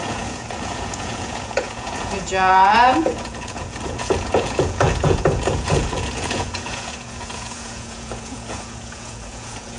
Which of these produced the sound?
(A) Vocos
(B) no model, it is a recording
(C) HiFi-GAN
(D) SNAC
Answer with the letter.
A